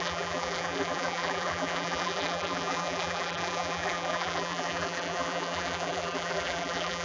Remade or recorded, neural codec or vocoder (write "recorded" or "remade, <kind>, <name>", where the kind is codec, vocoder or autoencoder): remade, vocoder, BigVGAN v2